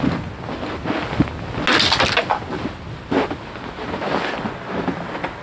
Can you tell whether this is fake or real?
real